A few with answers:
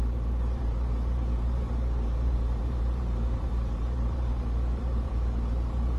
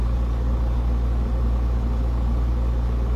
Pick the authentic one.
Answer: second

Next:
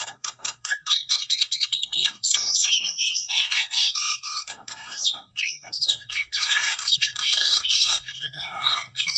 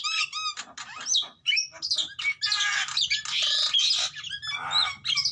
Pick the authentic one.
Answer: second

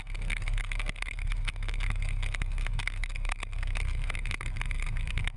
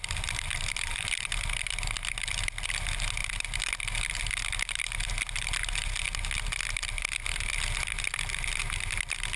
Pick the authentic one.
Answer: second